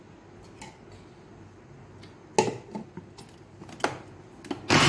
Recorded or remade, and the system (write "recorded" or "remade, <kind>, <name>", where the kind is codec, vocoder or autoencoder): recorded